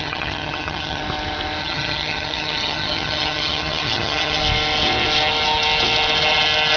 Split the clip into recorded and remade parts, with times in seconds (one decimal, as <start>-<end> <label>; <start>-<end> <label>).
0.0-1.0 remade; 1.0-1.6 recorded; 1.6-4.4 remade; 4.4-6.8 recorded